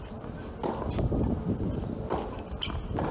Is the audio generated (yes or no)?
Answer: no